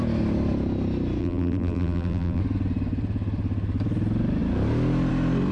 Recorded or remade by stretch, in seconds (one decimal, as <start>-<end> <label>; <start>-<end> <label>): 0.0-1.2 recorded; 1.2-2.4 remade; 2.4-5.5 recorded